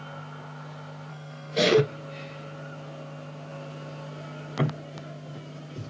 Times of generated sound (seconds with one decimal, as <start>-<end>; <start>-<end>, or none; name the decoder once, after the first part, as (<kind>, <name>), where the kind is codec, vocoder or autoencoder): 1.1-1.8 (codec, SNAC)